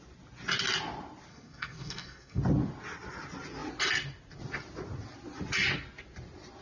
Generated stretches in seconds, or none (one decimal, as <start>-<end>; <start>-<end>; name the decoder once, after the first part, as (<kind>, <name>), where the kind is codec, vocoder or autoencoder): 1.3-2.4 (codec, SNAC)